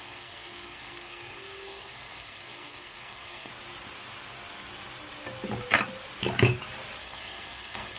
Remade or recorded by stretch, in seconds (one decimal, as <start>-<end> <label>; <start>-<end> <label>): 0.0-3.5 remade; 3.5-7.0 recorded; 7.0-8.0 remade